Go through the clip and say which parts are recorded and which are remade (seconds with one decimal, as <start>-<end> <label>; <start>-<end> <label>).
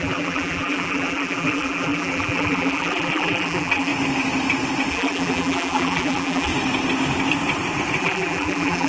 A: 0.0-3.9 remade; 3.9-4.9 recorded; 4.9-6.5 remade; 6.5-8.0 recorded; 8.0-8.9 remade